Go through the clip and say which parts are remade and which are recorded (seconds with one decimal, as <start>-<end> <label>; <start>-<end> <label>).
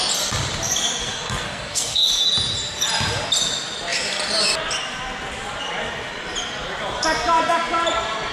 0.0-1.0 recorded; 1.0-2.2 remade; 2.2-8.3 recorded